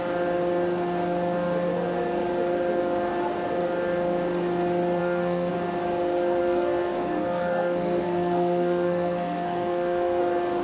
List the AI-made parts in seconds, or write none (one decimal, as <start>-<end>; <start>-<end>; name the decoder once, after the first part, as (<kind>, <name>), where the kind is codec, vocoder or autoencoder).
5.0-5.5 (codec, SNAC); 6.4-10.2